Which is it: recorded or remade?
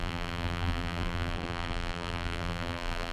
remade